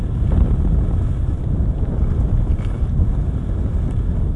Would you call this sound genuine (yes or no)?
yes